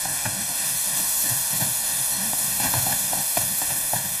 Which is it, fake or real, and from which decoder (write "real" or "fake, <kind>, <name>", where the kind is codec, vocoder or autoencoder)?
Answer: fake, autoencoder, DAC-VAE